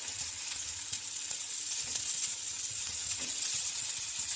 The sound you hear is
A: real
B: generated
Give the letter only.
B